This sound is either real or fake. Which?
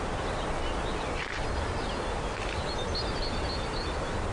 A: real